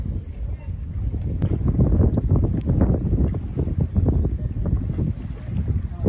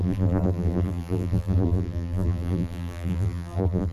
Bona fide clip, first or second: first